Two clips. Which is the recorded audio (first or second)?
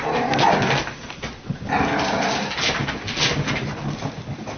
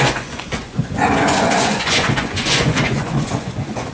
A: first